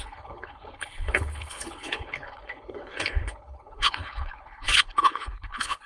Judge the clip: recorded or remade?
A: remade